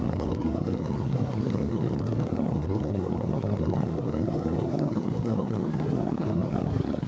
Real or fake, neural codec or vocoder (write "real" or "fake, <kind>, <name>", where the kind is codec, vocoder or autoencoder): fake, codec, SNAC